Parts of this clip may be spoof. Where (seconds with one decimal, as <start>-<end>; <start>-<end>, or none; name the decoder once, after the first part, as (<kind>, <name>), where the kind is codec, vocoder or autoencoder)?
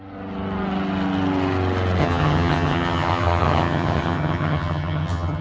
2.0-5.4 (vocoder, HiFi-GAN)